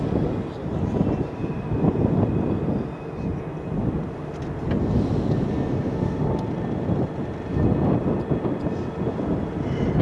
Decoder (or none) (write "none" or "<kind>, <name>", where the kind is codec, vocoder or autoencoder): none